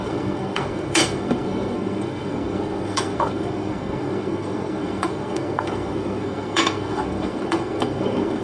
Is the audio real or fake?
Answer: fake